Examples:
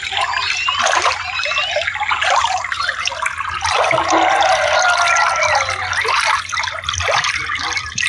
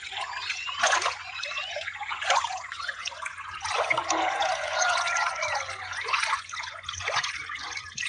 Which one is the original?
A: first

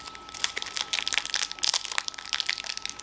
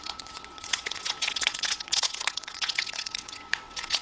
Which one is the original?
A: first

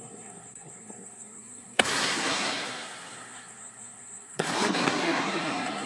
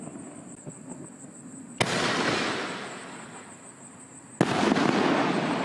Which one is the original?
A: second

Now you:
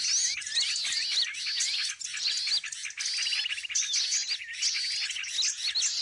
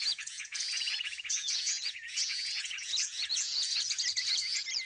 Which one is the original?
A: first